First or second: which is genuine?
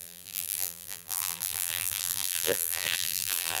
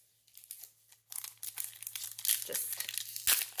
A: second